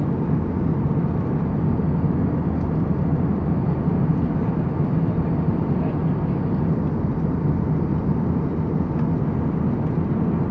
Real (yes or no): yes